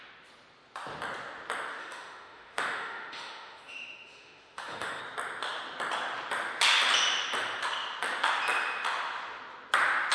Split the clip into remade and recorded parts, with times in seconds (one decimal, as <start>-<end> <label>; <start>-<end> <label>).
0.0-1.8 recorded; 1.8-5.0 remade; 5.0-10.1 recorded